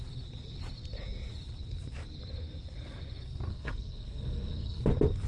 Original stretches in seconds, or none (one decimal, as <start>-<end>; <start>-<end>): 0.0-3.5; 4.8-5.3